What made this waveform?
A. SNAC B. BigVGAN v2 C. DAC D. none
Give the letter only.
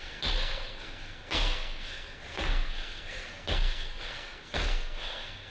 A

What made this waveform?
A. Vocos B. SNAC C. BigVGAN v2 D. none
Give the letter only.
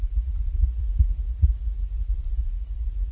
A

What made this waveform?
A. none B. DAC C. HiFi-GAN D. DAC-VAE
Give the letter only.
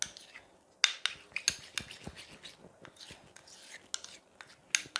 A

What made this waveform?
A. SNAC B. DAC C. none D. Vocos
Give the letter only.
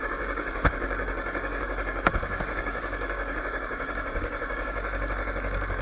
B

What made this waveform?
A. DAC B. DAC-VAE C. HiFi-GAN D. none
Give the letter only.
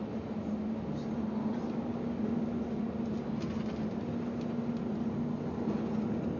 D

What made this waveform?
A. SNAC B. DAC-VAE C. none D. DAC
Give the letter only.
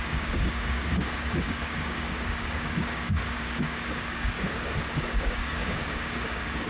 D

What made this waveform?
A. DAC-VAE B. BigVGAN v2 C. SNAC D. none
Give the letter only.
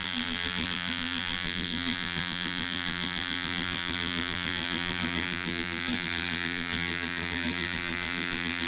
B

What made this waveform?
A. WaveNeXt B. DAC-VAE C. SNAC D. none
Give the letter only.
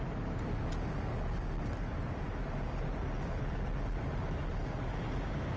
D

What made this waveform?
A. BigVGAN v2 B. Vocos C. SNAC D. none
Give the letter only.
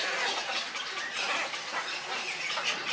D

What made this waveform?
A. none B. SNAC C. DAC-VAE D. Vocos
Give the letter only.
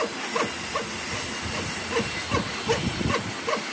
A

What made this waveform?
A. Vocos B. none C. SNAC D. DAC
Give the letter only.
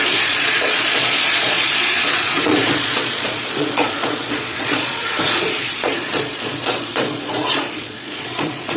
A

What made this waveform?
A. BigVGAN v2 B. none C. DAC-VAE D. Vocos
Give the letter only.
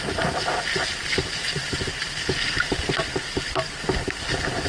B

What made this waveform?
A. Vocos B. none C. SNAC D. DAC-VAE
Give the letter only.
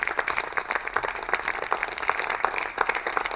B